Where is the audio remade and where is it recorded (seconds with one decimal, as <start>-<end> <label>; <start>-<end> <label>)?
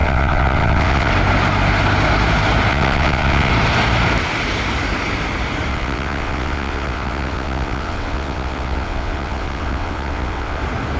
0.0-1.1 remade; 1.1-2.7 recorded; 2.7-3.5 remade; 3.5-5.7 recorded; 5.7-10.6 remade; 10.6-11.0 recorded